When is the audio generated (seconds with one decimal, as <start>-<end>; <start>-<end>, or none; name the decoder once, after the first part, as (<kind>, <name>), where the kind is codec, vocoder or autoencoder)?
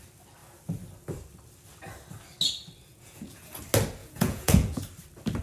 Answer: 2.9-3.6 (vocoder, Vocos); 4.0-4.8